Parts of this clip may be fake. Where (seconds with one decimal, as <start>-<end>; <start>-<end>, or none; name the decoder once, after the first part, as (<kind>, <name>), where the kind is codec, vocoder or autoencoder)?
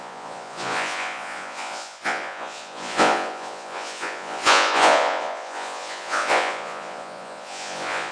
0.0-8.1 (vocoder, Vocos)